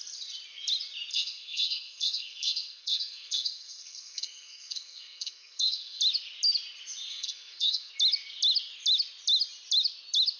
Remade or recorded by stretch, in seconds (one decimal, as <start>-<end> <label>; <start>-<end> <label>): 0.0-1.1 recorded; 1.1-6.0 remade; 6.0-7.1 recorded; 7.1-7.9 remade; 7.9-10.4 recorded